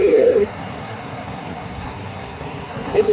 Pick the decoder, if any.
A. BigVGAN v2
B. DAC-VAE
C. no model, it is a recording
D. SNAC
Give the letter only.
D